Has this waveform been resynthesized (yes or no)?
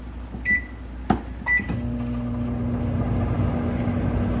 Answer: no